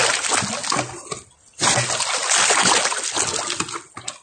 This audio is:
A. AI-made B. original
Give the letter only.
B